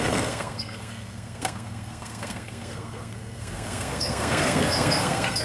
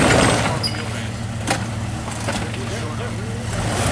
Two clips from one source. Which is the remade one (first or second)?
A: first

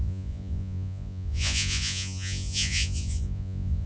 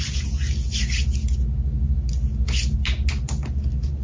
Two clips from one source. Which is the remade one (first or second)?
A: first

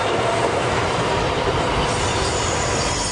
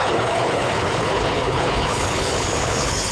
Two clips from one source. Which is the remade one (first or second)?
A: second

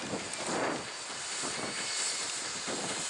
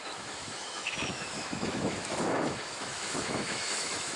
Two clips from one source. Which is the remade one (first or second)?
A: second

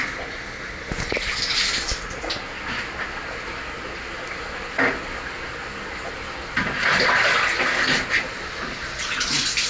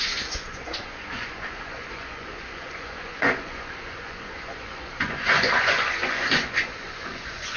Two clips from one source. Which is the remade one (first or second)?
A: second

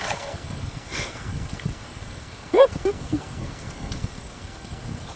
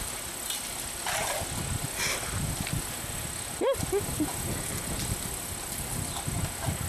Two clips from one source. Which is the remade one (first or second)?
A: first